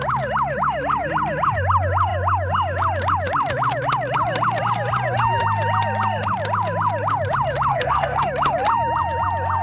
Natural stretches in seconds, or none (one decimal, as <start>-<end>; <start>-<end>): 0.0-7.7; 8.2-9.6